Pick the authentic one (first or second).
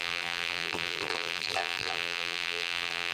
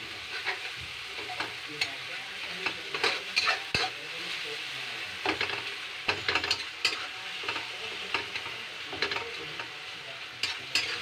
second